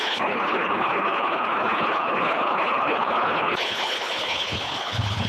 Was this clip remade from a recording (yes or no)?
yes